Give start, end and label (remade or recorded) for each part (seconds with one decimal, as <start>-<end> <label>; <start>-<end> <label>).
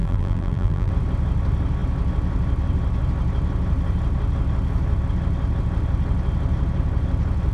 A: 0.0-0.9 remade; 0.9-7.5 recorded